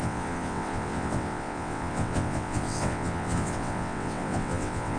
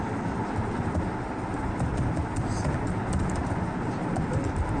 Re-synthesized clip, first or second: first